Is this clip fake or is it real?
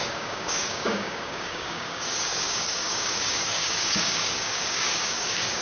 fake